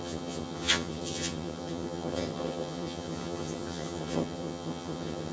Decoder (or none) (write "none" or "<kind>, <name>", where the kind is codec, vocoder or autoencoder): vocoder, HiFi-GAN